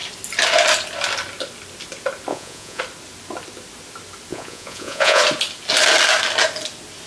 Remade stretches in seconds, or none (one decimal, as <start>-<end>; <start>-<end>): 2.3-2.8; 4.3-5.2